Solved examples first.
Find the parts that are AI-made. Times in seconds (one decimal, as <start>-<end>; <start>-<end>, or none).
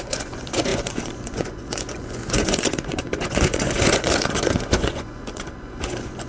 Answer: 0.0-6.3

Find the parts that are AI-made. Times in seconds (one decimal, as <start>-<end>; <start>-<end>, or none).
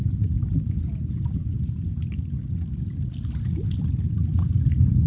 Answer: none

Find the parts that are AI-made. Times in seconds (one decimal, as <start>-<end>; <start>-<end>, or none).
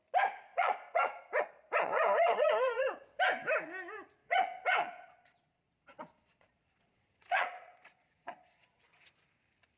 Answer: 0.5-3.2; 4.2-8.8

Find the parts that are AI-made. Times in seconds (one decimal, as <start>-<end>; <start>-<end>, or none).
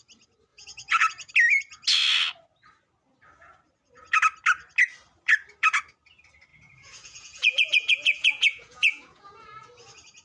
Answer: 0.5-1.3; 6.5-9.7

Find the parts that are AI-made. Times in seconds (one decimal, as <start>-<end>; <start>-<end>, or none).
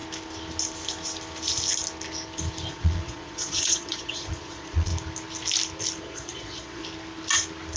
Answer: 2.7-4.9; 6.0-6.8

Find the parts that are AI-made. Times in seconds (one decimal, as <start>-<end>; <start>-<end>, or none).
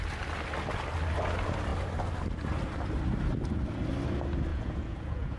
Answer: 4.5-5.4